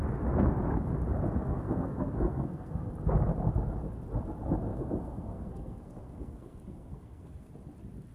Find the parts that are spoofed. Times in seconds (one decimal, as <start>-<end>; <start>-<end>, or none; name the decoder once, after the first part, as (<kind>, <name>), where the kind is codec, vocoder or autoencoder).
1.4-2.9 (codec, SNAC); 4.7-7.5